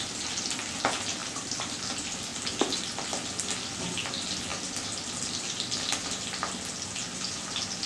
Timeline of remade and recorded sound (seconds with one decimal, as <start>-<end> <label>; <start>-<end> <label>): 0.0-1.2 recorded; 1.2-1.7 remade; 1.7-4.5 recorded; 4.5-5.1 remade; 5.1-7.9 recorded